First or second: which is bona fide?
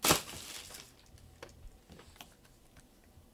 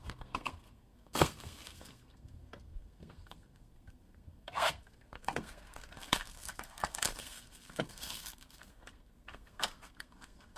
first